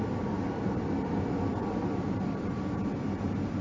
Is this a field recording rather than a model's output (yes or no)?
yes